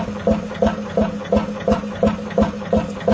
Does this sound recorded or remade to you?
remade